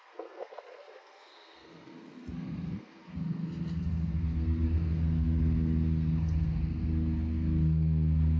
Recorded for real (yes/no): no